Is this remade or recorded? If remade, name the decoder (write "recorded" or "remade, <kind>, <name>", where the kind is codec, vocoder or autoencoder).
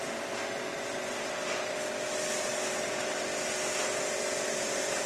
recorded